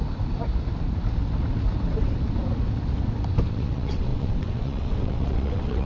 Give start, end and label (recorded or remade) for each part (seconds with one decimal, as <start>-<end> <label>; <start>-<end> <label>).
0.0-3.5 recorded; 3.5-5.9 remade